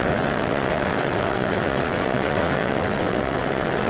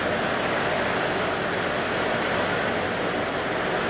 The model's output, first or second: first